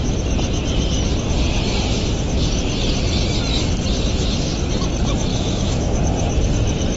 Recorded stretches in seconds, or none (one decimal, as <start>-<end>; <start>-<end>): 0.0-5.3; 6.0-7.0